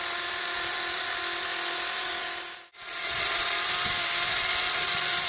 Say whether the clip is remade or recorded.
recorded